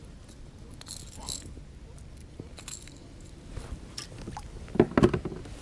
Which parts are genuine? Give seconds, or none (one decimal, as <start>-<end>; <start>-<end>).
0.0-5.6